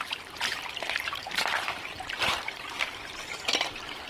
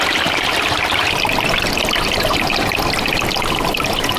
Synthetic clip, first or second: first